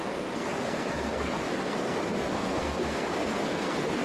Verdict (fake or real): fake